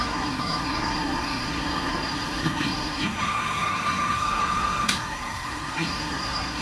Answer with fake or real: fake